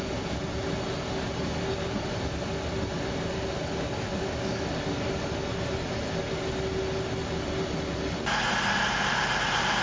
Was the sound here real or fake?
real